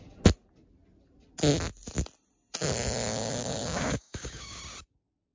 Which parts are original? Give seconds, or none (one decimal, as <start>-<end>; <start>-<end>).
0.0-3.1; 4.6-5.3